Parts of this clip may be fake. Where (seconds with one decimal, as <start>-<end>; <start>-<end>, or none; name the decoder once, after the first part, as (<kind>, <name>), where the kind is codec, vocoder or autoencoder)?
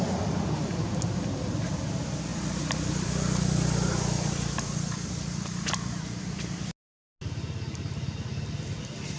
2.3-6.7 (vocoder, BigVGAN v2); 8.3-9.2